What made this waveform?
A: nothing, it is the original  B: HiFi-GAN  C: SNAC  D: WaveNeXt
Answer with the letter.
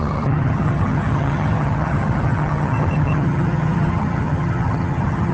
B